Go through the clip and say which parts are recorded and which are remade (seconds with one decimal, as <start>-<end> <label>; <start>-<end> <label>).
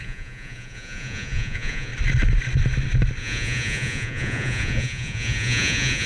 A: 0.0-1.9 remade; 1.9-3.2 recorded; 3.2-6.1 remade